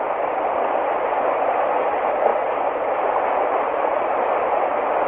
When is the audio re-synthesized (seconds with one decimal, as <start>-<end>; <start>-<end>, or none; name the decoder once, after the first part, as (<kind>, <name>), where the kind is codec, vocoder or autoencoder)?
2.3-3.0 (vocoder, BigVGAN v2)